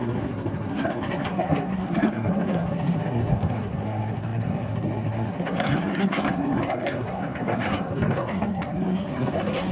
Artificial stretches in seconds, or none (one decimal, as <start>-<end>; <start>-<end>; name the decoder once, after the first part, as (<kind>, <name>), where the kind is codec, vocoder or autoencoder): 0.0-9.7 (codec, SNAC)